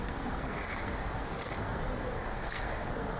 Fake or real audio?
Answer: fake